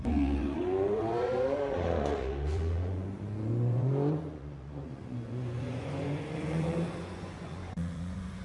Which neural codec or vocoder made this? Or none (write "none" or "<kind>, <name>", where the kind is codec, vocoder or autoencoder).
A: vocoder, Vocos